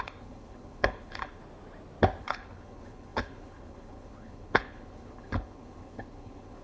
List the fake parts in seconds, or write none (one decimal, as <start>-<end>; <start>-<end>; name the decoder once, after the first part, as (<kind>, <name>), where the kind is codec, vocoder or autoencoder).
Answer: 0.0-1.4 (codec, HILCodec); 2.2-6.6